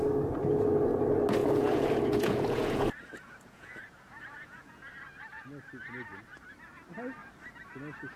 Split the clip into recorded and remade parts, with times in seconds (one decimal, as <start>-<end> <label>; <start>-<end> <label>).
0.0-1.4 recorded; 1.4-4.9 remade; 4.9-8.2 recorded